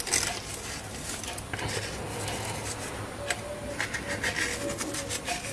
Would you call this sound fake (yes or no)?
no